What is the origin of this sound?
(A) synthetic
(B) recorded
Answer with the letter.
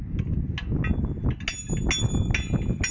B